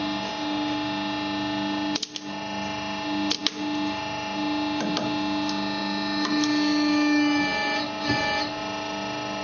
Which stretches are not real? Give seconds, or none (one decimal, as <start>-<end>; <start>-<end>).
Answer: none